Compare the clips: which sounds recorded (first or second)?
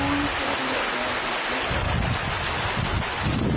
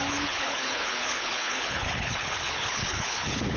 first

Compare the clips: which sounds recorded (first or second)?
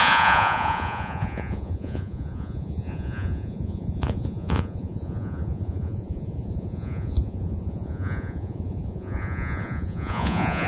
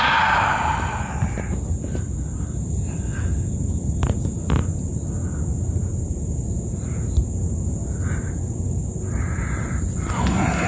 second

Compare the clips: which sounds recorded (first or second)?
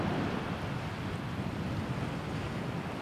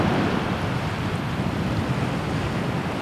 first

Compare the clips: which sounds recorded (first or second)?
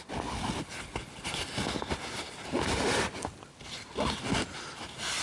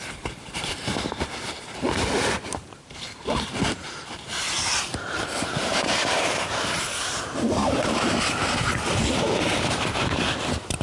first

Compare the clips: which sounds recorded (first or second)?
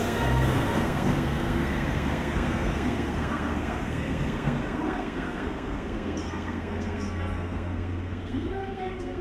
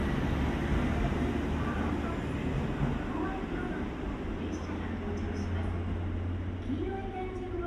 second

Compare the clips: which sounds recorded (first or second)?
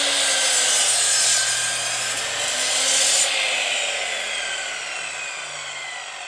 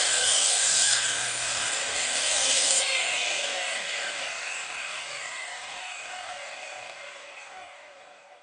first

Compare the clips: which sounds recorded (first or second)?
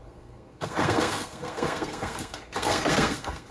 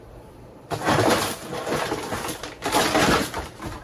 second